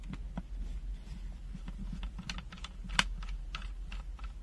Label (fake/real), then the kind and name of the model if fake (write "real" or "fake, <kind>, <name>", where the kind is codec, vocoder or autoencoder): real